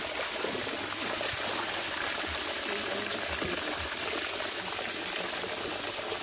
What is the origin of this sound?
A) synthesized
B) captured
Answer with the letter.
B